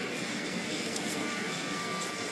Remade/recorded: remade